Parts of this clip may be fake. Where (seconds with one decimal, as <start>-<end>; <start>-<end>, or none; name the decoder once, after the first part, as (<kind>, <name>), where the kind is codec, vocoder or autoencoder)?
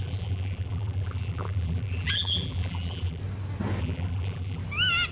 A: 0.0-3.2 (vocoder, BigVGAN v2); 3.8-4.6